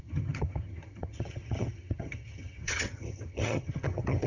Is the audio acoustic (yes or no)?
no